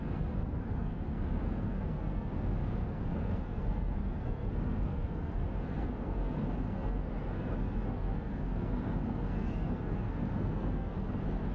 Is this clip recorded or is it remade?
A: remade